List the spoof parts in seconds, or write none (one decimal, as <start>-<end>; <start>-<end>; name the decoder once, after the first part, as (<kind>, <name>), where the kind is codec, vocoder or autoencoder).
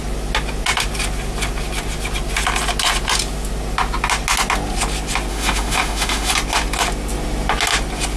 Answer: 5.3-6.3 (autoencoder, DAC-VAE)